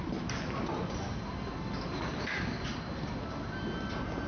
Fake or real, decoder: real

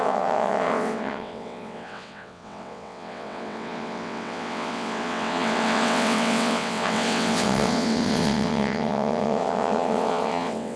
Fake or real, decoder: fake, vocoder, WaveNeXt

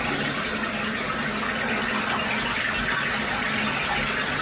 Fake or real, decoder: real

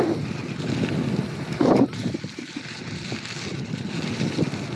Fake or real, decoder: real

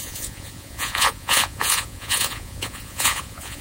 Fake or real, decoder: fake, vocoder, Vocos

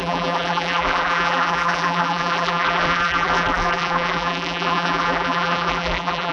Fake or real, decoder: fake, vocoder, BigVGAN v2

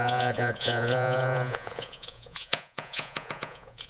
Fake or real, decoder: fake, vocoder, Vocos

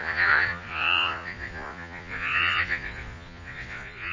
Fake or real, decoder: fake, vocoder, Vocos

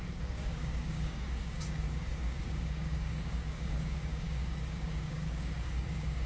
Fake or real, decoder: fake, codec, DAC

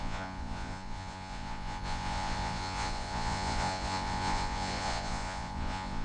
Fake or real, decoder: fake, vocoder, Vocos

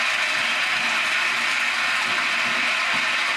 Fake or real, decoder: real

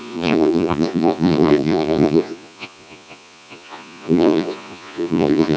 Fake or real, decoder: fake, vocoder, Vocos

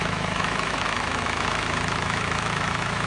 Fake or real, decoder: fake, autoencoder, DAC-VAE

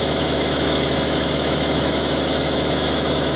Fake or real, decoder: fake, autoencoder, DAC-VAE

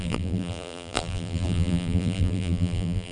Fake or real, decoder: fake, vocoder, BigVGAN v2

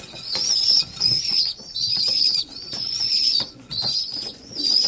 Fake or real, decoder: fake, vocoder, Vocos